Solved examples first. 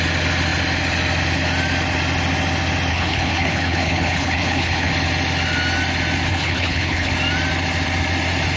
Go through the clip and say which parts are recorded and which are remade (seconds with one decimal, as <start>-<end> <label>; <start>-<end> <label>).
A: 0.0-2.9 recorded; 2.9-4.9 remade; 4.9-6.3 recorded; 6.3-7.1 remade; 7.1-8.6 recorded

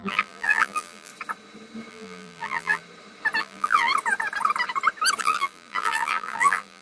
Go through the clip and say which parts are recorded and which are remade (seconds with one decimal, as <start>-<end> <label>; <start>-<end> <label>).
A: 0.0-1.1 remade; 1.1-1.9 recorded; 1.9-2.8 remade; 2.8-3.4 recorded; 3.4-3.9 remade; 3.9-5.2 recorded; 5.2-6.8 remade

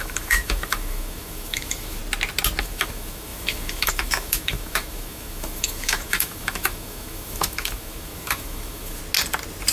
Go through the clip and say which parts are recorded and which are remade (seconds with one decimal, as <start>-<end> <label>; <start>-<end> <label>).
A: 0.0-2.0 remade; 2.0-2.6 recorded; 2.6-9.0 remade; 9.0-9.7 recorded

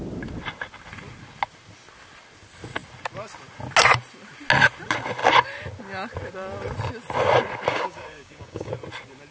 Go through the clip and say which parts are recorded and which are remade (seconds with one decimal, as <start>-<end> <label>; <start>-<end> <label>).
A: 0.0-7.7 recorded; 7.7-8.7 remade; 8.7-9.3 recorded